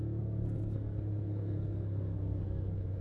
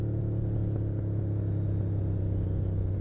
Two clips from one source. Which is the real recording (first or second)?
second